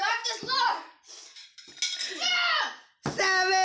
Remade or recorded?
recorded